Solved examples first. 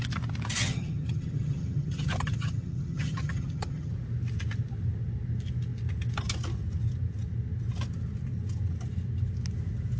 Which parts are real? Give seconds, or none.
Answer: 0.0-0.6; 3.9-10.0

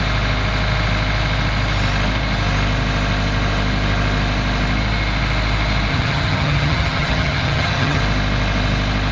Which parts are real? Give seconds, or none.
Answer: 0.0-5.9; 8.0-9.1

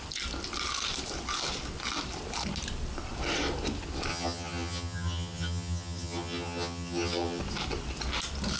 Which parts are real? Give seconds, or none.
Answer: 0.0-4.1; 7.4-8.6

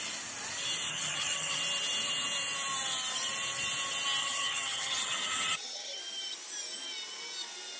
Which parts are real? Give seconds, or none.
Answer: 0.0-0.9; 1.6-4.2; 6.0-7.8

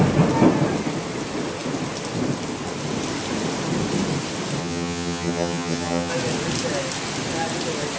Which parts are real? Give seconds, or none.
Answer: 0.0-4.6; 6.1-8.0